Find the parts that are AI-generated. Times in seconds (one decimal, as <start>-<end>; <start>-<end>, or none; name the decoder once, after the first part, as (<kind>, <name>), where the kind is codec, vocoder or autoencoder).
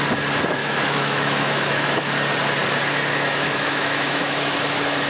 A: 0.6-2.1 (autoencoder, DAC-VAE); 3.1-5.1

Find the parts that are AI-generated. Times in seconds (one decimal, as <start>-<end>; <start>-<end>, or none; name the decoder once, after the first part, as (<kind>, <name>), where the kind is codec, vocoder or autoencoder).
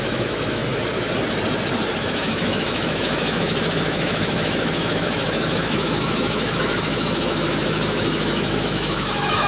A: 0.0-0.6 (autoencoder, DAC-VAE); 2.0-9.5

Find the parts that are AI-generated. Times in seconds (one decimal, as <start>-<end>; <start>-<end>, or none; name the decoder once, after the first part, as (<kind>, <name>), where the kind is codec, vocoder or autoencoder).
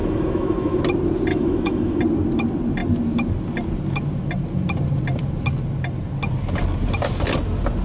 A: 0.0-0.8 (autoencoder, DAC-VAE); 1.3-2.0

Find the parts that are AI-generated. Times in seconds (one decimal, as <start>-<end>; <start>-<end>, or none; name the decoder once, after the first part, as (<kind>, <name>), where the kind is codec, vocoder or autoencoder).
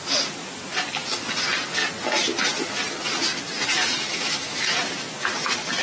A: 4.1-4.7 (autoencoder, DAC-VAE)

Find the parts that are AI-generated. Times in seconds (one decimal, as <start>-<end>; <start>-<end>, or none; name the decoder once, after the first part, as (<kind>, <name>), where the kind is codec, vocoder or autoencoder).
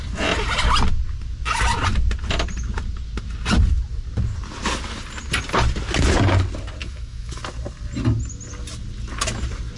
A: 6.8-7.4 (autoencoder, DAC-VAE)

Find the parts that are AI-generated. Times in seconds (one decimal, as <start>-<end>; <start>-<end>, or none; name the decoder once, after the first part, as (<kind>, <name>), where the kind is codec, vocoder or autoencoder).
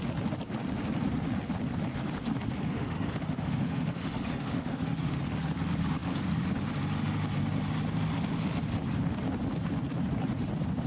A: 2.7-5.2 (autoencoder, DAC-VAE)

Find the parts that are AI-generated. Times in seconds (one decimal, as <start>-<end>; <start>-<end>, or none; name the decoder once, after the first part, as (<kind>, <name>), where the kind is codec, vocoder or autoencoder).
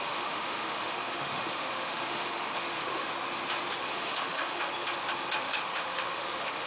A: 0.0-3.1 (autoencoder, DAC-VAE); 3.8-4.7; 5.4-6.7